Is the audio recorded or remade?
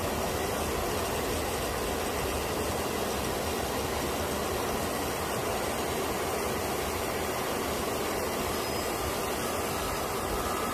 recorded